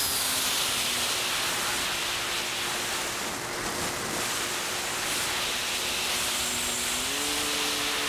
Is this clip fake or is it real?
real